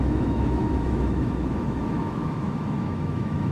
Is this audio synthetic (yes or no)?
yes